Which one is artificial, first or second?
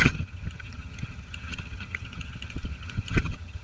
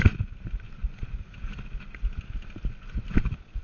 first